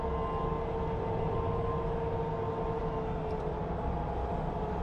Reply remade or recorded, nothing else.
recorded